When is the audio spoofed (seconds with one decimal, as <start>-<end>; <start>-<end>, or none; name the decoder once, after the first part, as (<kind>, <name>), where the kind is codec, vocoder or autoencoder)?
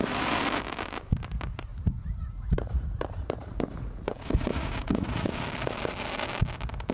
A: 1.7-5.3 (vocoder, Vocos)